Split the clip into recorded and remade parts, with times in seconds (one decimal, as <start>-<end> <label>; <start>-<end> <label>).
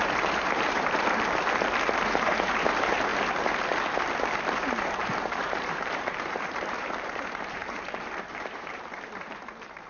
0.0-3.1 remade; 3.1-4.5 recorded; 4.5-9.9 remade